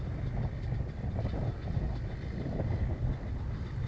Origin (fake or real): real